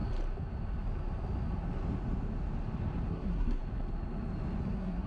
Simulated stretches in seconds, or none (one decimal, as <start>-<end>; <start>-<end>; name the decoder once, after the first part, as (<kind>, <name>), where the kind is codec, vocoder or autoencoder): 3.1-3.6 (codec, SNAC); 4.6-5.1